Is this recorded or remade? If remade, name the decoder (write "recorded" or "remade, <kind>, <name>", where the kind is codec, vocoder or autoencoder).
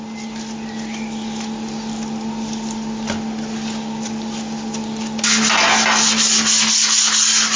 recorded